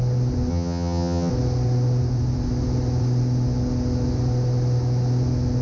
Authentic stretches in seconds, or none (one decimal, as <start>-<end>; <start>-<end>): 0.0-0.5; 1.3-5.6